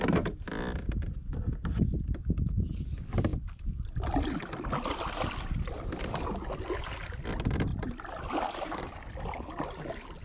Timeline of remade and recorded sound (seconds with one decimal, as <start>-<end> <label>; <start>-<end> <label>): 0.0-7.7 recorded; 7.7-9.4 remade; 9.4-10.2 recorded